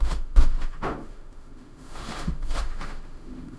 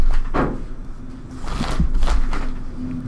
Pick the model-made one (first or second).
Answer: first